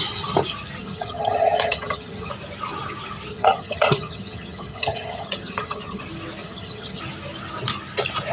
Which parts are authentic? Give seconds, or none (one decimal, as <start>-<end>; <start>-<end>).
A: 0.0-0.8; 2.3-3.3; 6.0-6.4; 7.0-8.3